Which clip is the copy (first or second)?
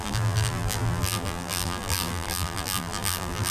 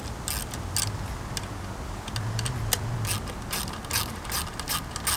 first